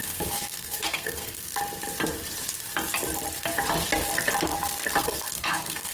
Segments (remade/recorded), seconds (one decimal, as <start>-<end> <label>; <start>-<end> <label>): 0.0-1.5 remade; 1.5-5.0 recorded; 5.0-5.9 remade